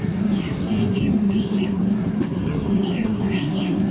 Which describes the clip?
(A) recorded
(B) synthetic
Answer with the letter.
B